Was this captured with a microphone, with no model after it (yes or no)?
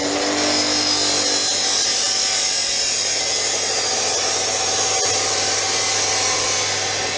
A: yes